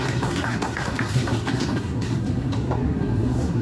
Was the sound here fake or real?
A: fake